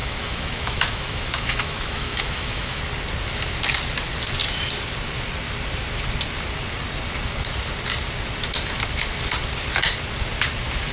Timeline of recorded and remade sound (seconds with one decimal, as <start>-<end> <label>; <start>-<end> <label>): 0.0-2.8 remade; 2.8-10.9 recorded